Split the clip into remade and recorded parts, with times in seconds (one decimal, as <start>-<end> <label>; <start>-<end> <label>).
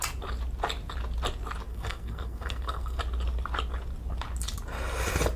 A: 0.0-1.7 recorded; 1.7-3.0 remade; 3.0-5.4 recorded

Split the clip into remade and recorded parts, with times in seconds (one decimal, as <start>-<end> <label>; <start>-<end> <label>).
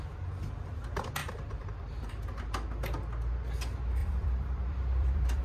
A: 0.0-1.2 recorded; 1.2-2.1 remade; 2.1-4.0 recorded; 4.0-5.4 remade